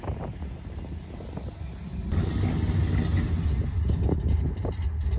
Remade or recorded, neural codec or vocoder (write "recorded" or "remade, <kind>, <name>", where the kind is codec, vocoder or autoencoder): recorded